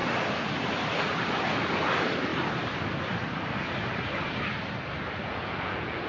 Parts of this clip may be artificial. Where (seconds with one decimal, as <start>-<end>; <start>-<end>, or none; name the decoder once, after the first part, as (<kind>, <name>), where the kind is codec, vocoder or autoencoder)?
5.3-6.1 (vocoder, Vocos)